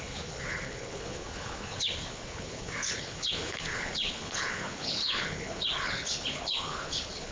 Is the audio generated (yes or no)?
yes